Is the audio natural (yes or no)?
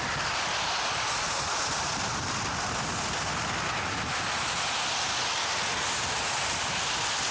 yes